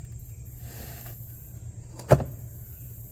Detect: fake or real real